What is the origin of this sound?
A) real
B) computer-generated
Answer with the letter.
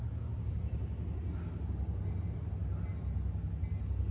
A